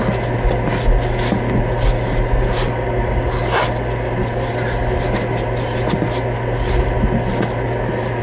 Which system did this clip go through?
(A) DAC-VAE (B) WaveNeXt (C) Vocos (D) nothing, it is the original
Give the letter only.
D